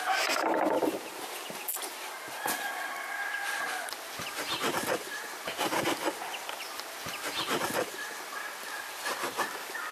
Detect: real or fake real